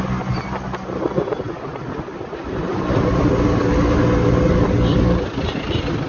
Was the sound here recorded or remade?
recorded